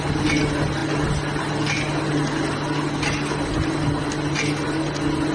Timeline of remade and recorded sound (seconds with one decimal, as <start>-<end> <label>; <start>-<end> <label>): 0.0-5.3 recorded